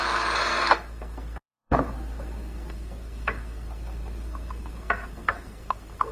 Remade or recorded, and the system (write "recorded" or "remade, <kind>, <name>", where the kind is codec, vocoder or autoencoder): remade, codec, SNAC